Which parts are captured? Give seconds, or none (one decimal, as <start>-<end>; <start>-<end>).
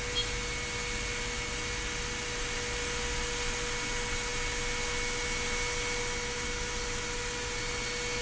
0.0-8.2